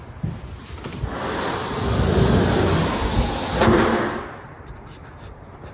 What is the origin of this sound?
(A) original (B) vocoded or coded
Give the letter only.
A